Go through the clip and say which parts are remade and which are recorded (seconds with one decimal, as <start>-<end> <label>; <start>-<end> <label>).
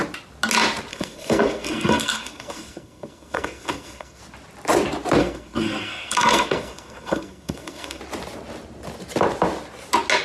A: 0.0-0.9 recorded; 0.9-4.2 remade; 4.2-5.2 recorded; 5.2-8.0 remade; 8.0-10.2 recorded